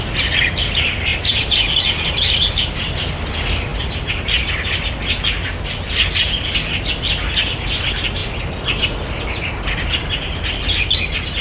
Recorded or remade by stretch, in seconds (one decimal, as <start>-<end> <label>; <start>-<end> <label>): 0.0-11.4 recorded